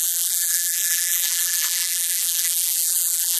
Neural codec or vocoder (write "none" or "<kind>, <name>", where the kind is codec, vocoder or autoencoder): vocoder, BigVGAN v2